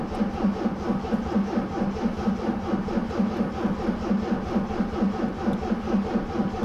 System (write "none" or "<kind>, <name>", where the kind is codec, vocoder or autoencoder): none